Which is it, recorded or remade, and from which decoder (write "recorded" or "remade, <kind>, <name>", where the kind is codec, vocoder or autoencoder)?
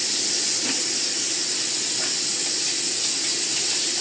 recorded